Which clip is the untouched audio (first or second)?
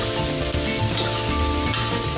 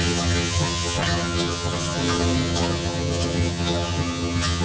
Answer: first